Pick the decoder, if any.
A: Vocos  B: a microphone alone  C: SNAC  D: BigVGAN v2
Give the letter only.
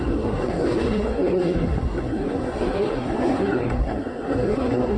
C